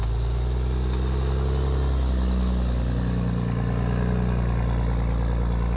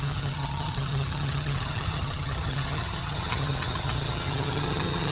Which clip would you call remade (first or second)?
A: second